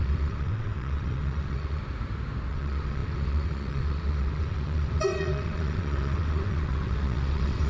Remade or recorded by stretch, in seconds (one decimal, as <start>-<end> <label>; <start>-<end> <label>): 0.0-1.8 remade; 1.8-2.5 recorded; 2.5-7.7 remade